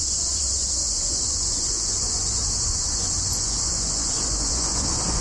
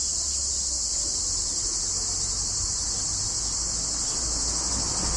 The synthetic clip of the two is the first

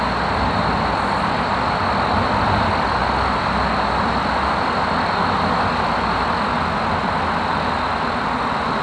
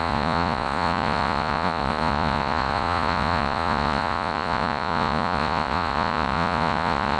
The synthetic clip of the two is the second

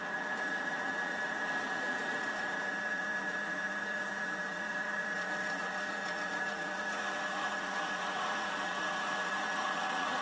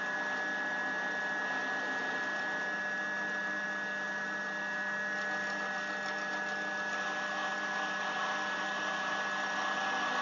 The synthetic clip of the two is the first